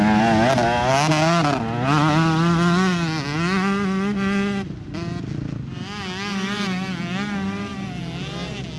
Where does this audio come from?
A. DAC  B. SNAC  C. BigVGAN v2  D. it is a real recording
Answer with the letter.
D